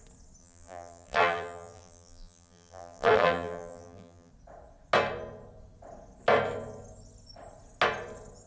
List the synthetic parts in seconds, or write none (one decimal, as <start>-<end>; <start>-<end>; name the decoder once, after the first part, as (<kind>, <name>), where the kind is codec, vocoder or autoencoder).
0.4-4.3 (vocoder, BigVGAN v2)